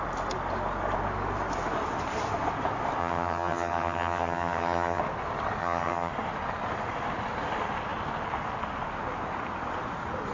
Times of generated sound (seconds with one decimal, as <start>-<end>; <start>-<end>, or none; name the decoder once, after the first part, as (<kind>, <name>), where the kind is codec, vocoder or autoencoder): 3.0-5.0 (vocoder, HiFi-GAN); 5.6-6.1